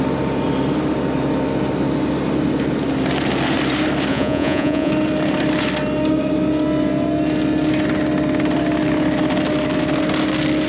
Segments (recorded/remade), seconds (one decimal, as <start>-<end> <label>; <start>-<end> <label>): 0.0-4.1 recorded; 4.1-4.9 remade; 4.9-10.7 recorded